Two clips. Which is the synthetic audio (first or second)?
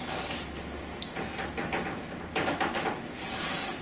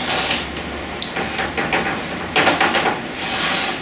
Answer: second